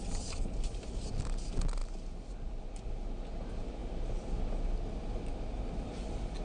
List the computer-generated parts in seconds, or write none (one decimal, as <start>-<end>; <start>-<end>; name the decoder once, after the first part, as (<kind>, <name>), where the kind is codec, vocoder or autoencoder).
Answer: none